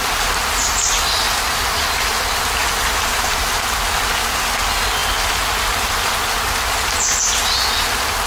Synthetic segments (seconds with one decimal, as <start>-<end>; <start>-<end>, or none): 2.6-3.4